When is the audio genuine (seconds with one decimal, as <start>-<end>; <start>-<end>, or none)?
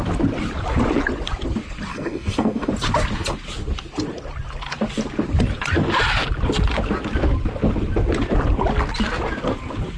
0.0-1.9; 2.7-10.0